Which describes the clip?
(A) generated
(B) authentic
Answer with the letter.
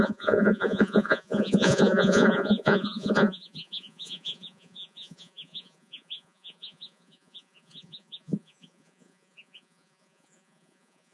A